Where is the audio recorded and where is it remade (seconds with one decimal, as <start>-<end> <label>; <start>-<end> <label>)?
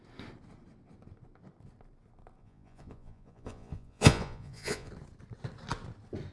0.0-2.4 recorded; 2.4-4.9 remade; 4.9-6.3 recorded